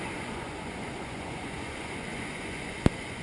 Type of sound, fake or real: fake